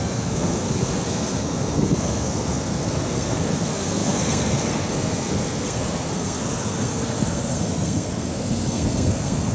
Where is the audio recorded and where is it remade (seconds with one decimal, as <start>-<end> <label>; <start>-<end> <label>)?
0.0-9.5 remade